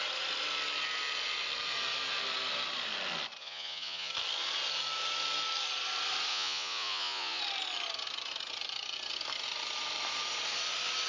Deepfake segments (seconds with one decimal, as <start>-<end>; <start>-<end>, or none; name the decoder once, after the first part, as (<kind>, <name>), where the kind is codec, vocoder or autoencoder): 3.4-4.1 (vocoder, Vocos); 6.3-7.4